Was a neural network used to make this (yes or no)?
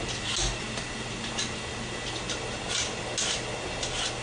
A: no